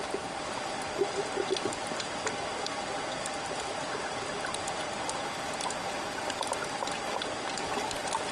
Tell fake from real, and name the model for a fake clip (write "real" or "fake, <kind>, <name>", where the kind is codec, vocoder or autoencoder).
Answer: real